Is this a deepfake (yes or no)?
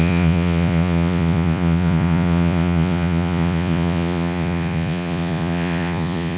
yes